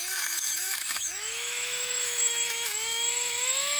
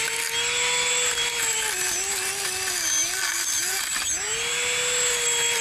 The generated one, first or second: first